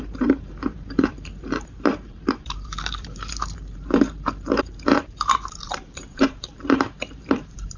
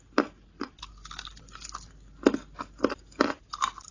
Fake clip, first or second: first